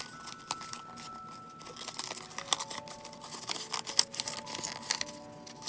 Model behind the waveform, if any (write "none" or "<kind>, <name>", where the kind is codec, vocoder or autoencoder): none